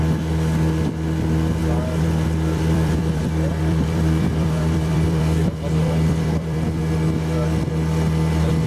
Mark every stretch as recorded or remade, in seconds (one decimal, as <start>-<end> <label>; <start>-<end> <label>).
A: 0.0-1.6 recorded; 1.6-3.2 remade; 3.2-3.6 recorded; 3.6-6.8 remade; 6.8-8.7 recorded